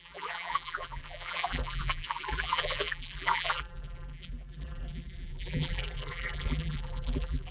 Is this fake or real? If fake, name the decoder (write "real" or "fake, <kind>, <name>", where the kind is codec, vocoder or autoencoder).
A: fake, vocoder, BigVGAN v2